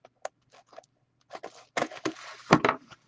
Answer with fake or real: real